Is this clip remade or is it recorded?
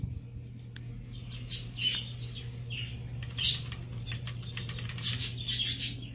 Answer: recorded